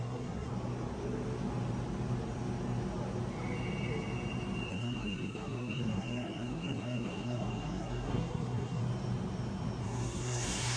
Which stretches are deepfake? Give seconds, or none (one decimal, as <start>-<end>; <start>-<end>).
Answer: 0.0-0.5; 4.7-8.8; 9.8-10.8